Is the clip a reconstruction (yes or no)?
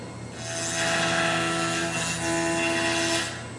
no